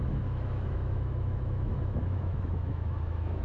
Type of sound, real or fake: fake